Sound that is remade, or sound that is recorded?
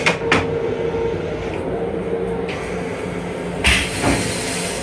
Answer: recorded